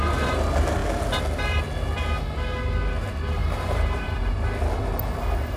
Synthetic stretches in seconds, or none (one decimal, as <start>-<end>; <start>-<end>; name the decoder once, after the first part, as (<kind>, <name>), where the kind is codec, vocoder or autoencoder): 3.4-4.3 (vocoder, BigVGAN v2)